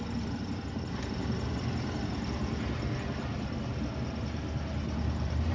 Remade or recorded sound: recorded